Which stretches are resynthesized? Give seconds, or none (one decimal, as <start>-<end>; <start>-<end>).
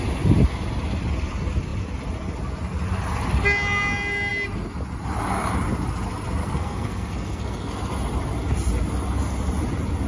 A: 6.4-7.7